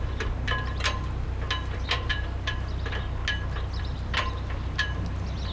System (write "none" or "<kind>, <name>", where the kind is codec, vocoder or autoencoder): none